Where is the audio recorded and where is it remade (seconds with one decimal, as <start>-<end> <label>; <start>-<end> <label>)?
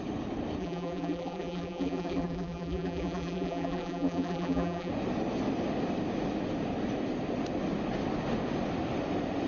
0.0-0.6 recorded; 0.6-4.9 remade; 4.9-9.5 recorded